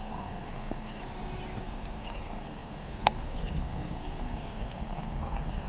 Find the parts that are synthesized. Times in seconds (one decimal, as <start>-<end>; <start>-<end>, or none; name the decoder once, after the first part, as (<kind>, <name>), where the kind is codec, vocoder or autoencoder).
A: 0.0-1.0 (codec, SNAC); 1.6-5.7